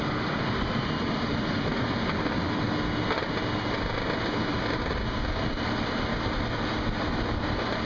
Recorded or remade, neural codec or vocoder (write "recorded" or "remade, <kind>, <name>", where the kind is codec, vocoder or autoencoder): recorded